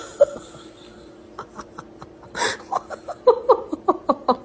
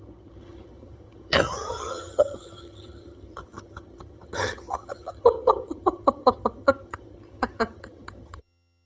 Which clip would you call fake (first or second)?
second